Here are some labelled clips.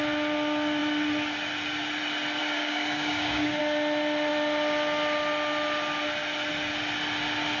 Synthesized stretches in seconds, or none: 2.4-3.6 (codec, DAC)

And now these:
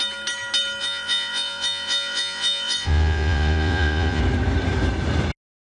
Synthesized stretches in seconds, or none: 0.8-4.2 (vocoder, Vocos)

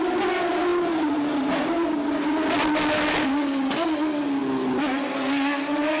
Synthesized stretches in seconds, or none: none

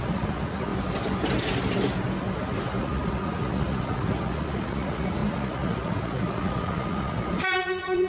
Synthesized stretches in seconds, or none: 0.0-0.7 (vocoder, Vocos); 2.8-8.1

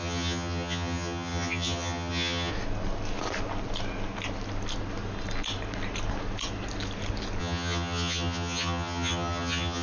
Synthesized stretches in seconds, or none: 0.0-2.5 (vocoder, HiFi-GAN); 7.4-9.8

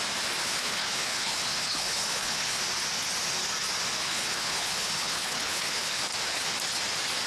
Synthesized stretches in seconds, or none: 0.4-2.6 (codec, HILCodec); 4.0-6.0

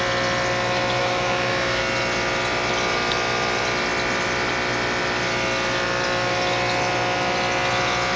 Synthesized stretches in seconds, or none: 1.0-1.8 (autoencoder, DAC-VAE)

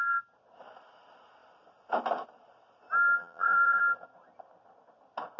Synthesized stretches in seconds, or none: 3.2-3.8 (vocoder, BigVGAN v2)